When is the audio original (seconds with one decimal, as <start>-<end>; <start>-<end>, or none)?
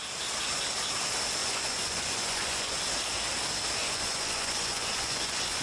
0.0-1.4; 2.8-3.8